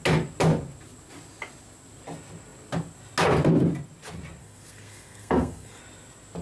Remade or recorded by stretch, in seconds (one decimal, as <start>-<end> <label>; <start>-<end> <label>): 0.0-4.4 recorded; 4.4-5.8 remade; 5.8-6.4 recorded